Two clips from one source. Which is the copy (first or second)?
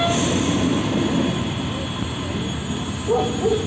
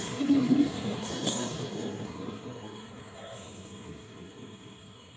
second